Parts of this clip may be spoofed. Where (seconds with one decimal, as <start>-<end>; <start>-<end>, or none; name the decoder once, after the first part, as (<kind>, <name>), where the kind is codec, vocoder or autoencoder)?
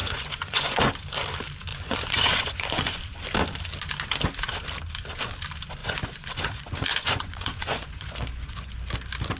0.0-0.9 (vocoder, Vocos); 1.7-3.0; 5.8-8.7